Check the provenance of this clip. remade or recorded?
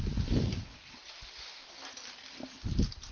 recorded